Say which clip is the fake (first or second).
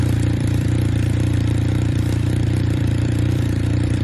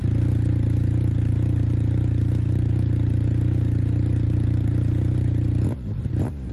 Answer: first